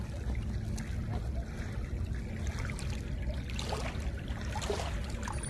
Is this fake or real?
real